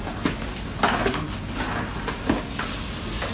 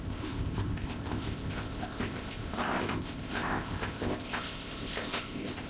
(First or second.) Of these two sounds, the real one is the first